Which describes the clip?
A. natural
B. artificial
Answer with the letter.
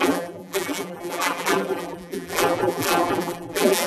B